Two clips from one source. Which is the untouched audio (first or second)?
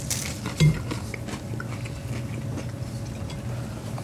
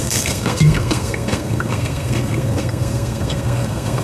first